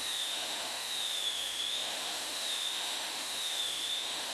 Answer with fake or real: fake